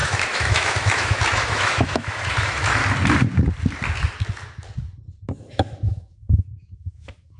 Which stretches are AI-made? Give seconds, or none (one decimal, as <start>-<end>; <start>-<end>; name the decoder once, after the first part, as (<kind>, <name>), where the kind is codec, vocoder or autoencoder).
0.0-2.8 (autoencoder, DAC-VAE); 5.3-7.4